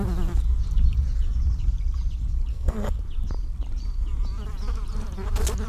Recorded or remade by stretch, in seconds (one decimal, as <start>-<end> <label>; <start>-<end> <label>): 0.0-2.5 recorded; 2.5-3.0 remade; 3.0-5.7 recorded